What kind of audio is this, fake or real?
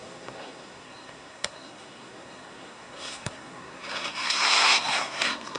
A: fake